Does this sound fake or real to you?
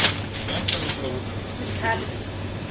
real